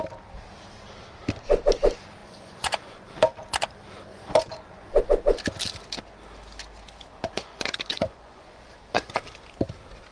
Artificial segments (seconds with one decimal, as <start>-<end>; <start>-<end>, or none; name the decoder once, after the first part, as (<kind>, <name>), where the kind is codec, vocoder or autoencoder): 2.2-3.1 (vocoder, Vocos); 4.1-5.0; 7.1-9.2